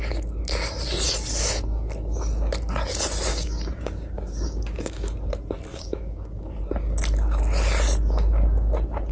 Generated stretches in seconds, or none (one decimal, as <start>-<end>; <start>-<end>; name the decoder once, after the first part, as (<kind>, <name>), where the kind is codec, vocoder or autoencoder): 3.3-5.3 (codec, DAC); 5.7-6.6